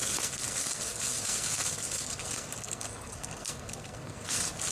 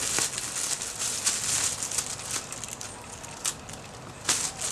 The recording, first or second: second